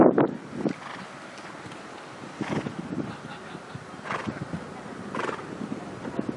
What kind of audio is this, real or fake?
real